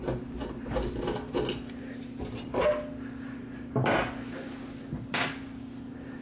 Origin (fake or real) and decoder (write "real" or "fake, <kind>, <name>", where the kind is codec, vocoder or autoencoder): real